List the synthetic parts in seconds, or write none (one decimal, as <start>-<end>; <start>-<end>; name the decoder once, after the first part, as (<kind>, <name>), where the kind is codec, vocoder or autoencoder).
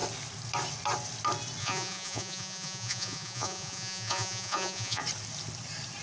1.6-5.0 (vocoder, Vocos)